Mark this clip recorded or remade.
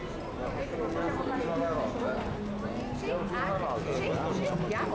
recorded